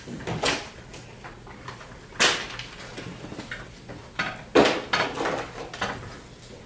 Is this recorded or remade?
recorded